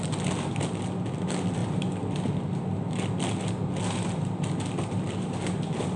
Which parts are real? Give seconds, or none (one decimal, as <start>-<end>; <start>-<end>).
0.0-6.0